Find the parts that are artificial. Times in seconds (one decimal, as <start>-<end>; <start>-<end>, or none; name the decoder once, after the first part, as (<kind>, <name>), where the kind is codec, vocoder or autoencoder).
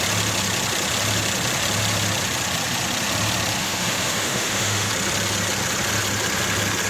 3.6-4.9 (autoencoder, DAC-VAE)